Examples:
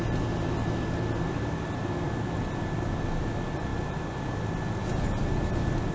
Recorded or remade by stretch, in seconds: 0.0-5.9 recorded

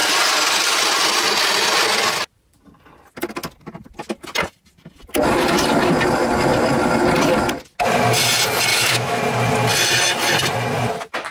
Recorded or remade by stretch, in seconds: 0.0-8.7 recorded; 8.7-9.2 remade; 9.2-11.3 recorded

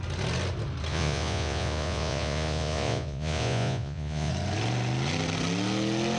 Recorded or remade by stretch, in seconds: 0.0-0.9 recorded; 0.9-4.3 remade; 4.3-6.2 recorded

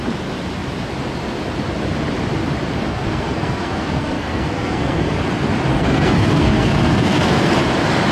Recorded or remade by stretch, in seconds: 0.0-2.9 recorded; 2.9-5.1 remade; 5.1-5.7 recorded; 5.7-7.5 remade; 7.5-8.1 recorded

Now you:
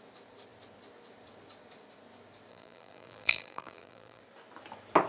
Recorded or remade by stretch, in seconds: 0.0-2.5 recorded; 2.5-4.2 remade; 4.2-5.1 recorded

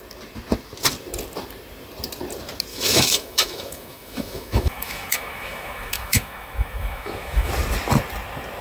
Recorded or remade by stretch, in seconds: 0.0-2.7 recorded; 2.7-7.5 remade; 7.5-8.6 recorded

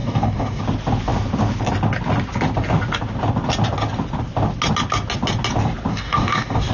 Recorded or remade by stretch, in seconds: 0.0-0.6 remade; 0.6-5.9 recorded; 5.9-6.7 remade